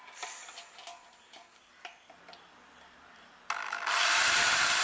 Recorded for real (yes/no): yes